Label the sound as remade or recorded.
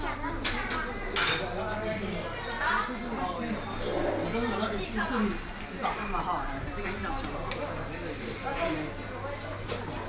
recorded